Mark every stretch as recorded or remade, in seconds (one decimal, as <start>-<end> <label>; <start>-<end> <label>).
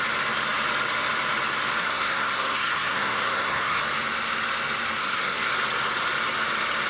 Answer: 0.0-1.8 recorded; 1.8-3.8 remade; 3.8-5.0 recorded; 5.0-5.5 remade; 5.5-6.9 recorded